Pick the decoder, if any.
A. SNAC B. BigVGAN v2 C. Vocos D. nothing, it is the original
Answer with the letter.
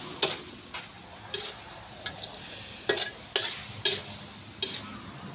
D